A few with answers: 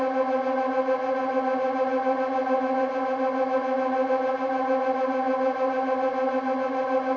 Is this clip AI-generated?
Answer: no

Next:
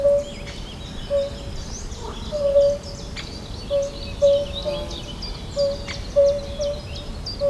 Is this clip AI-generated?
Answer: no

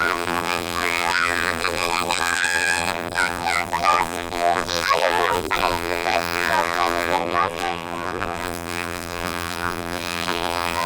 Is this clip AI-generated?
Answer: yes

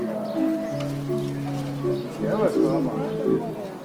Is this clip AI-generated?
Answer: no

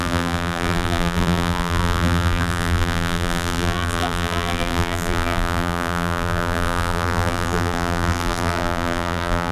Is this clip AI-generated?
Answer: yes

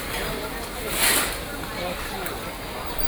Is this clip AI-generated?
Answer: yes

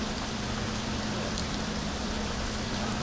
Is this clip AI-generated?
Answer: yes